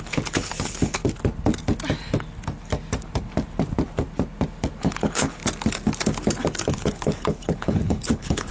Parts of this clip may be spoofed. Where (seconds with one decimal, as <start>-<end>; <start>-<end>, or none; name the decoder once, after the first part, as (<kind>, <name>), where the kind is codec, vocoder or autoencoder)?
0.0-1.0 (codec, HILCodec); 4.8-5.4; 6.7-8.5